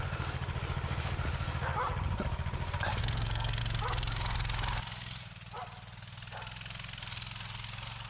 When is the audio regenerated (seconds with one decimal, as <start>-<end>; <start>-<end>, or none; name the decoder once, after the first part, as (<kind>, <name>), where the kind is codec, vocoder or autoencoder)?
3.0-3.6 (codec, SNAC)